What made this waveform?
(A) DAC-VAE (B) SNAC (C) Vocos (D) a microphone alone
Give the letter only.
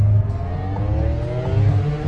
D